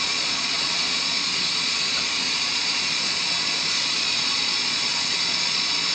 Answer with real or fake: fake